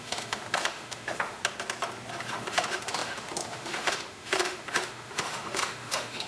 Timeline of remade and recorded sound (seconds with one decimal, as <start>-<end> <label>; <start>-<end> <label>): 0.0-1.4 remade; 1.4-2.3 recorded; 2.3-6.3 remade